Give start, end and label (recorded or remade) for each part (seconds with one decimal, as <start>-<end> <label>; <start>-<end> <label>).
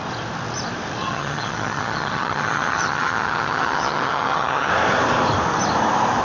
0.0-1.0 recorded; 1.0-4.7 remade; 4.7-6.2 recorded